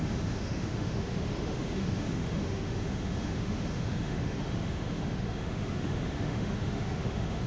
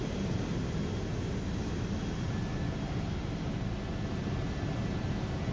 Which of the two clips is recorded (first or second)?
second